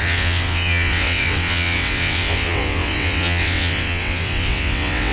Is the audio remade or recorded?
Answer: remade